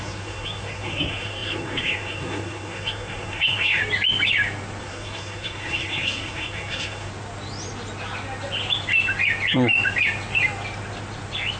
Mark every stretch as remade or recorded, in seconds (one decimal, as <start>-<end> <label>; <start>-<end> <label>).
0.0-3.8 remade; 3.8-4.8 recorded; 4.8-7.1 remade; 7.1-11.6 recorded